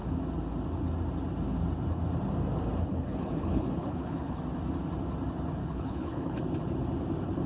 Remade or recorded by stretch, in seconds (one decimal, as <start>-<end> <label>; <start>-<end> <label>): 0.0-2.9 recorded; 2.9-4.4 remade; 4.4-5.6 recorded; 5.6-6.4 remade; 6.4-7.5 recorded